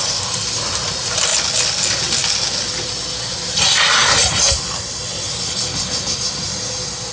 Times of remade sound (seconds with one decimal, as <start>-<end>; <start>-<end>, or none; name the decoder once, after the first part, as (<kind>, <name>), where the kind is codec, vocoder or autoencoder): none